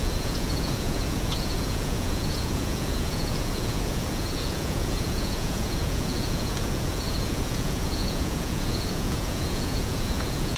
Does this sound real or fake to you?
fake